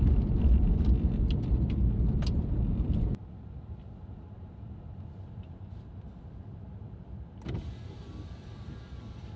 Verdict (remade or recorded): remade